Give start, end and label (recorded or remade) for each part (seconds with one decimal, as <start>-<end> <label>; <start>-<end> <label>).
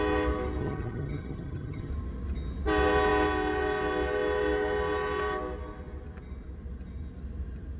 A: 0.0-0.6 recorded; 0.6-1.9 remade; 1.9-7.8 recorded